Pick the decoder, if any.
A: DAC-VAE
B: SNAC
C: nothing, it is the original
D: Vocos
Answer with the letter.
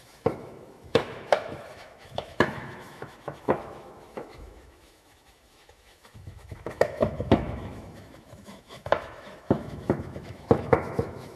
A